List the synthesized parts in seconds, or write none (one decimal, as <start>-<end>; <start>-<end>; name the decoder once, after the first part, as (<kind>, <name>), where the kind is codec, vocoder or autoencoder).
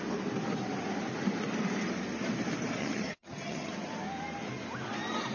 2.8-3.7 (vocoder, HiFi-GAN)